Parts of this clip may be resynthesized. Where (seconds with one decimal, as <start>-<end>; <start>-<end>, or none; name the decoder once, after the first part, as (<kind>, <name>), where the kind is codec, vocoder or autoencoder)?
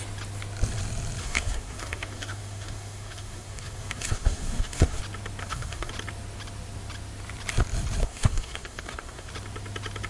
1.2-5.0 (codec, SNAC); 5.4-5.9; 8.0-9.3